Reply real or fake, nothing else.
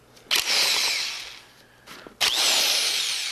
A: real